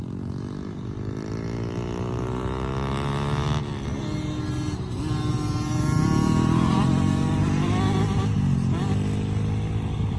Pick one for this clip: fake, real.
real